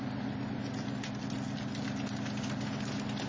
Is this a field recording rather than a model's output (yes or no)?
yes